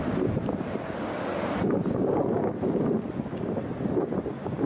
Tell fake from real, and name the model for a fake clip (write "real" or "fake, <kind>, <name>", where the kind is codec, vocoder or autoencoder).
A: real